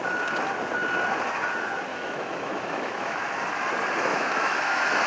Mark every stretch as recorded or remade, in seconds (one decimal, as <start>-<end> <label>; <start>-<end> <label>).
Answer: 0.0-1.9 recorded; 1.9-3.2 remade; 3.2-4.1 recorded; 4.1-5.1 remade